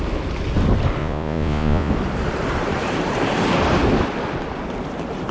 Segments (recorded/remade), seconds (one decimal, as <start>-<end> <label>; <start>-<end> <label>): 0.0-1.0 recorded; 1.0-1.9 remade; 1.9-5.3 recorded